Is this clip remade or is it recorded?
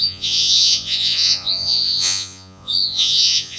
remade